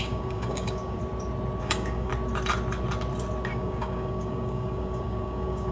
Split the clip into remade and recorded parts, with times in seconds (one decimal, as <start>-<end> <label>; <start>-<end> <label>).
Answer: 0.0-1.0 remade; 1.0-1.6 recorded; 1.6-2.1 remade; 2.1-3.5 recorded; 3.5-5.7 remade